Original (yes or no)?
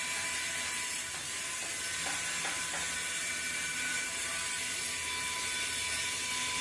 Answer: yes